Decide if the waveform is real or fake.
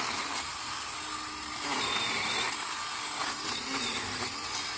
real